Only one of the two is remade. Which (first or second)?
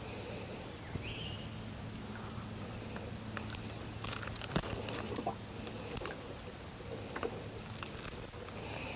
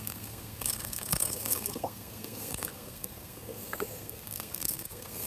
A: second